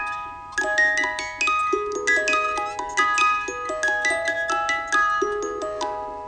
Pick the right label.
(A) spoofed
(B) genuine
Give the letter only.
B